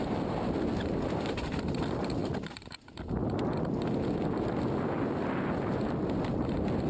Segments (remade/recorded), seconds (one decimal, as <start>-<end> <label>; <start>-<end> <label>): 0.0-6.9 recorded